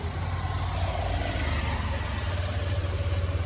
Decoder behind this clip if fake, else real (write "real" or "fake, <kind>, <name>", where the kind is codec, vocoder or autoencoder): real